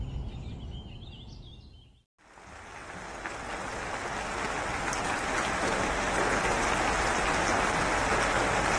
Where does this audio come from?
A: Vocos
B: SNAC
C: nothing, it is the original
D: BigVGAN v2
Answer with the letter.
C